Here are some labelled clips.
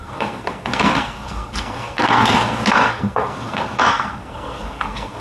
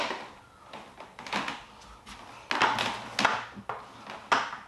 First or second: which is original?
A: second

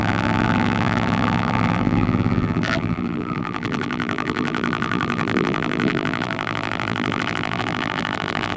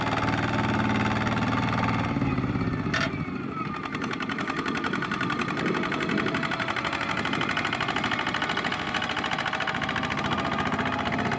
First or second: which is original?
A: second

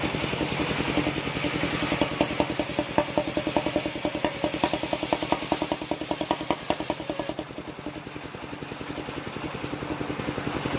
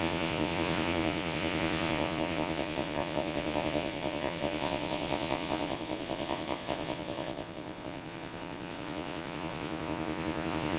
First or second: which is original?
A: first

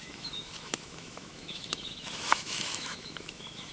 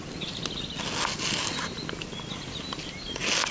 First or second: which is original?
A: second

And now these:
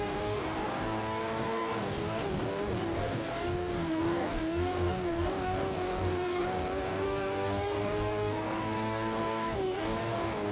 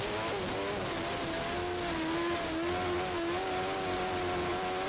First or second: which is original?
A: second